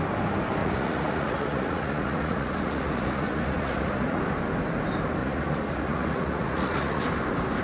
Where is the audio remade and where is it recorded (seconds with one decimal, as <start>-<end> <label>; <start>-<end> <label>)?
0.0-0.6 recorded; 0.6-4.2 remade; 4.2-5.2 recorded; 5.2-7.0 remade; 7.0-7.6 recorded